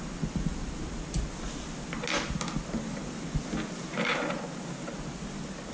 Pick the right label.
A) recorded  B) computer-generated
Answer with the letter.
A